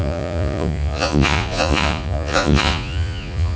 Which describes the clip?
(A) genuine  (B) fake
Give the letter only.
B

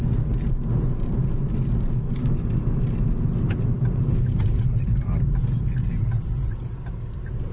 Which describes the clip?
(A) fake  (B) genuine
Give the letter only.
B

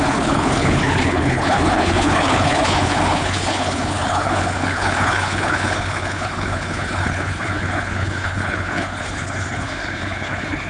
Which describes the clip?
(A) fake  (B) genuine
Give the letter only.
A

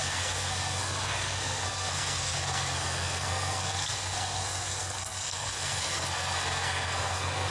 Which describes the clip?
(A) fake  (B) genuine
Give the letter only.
A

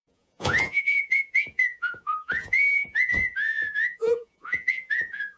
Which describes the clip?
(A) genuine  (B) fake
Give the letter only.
B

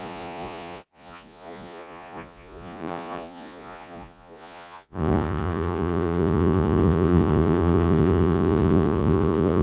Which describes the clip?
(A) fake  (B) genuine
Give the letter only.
A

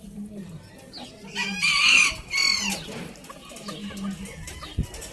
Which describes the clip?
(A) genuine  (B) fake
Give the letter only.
A